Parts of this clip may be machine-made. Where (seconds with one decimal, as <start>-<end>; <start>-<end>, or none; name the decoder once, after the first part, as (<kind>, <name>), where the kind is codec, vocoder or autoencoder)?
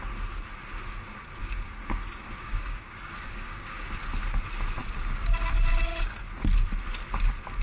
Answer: 1.4-4.0 (codec, DAC)